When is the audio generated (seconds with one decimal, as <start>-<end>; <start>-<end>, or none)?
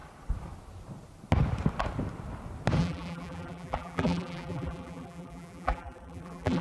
2.8-6.6